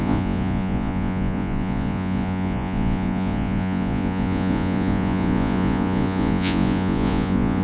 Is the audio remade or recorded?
remade